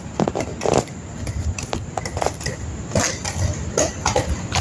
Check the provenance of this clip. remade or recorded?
recorded